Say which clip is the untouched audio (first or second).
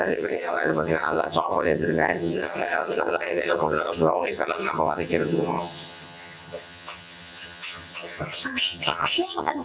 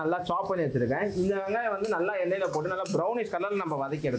second